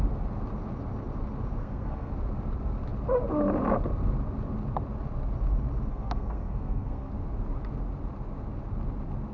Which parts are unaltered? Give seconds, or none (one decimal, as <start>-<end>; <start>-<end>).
0.0-1.6; 2.1-5.9; 7.1-9.3